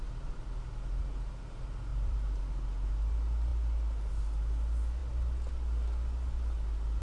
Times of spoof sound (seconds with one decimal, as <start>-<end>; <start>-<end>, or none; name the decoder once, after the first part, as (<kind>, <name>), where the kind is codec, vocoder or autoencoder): 1.9-2.4 (vocoder, BigVGAN v2)